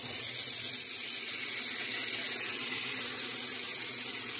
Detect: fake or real real